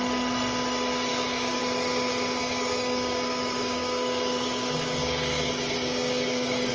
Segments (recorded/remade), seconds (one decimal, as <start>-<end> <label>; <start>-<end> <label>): 0.0-1.1 recorded; 1.1-1.6 remade; 1.6-2.4 recorded; 2.4-6.7 remade

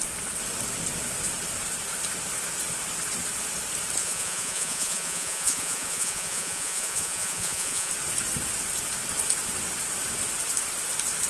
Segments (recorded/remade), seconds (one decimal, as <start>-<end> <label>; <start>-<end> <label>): 0.0-4.0 recorded; 4.0-7.9 remade; 7.9-11.3 recorded

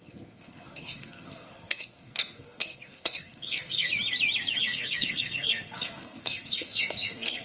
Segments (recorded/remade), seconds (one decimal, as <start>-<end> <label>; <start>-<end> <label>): 0.0-3.9 remade; 3.9-4.6 recorded; 4.6-7.4 remade

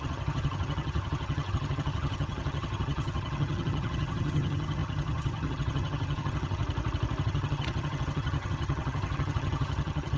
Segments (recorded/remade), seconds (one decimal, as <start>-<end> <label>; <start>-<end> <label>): 0.0-6.6 remade; 6.6-7.2 recorded; 7.2-10.2 remade